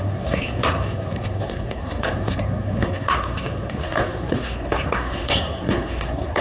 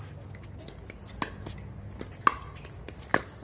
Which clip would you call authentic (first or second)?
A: second